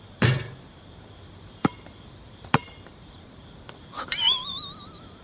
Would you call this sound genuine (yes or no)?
no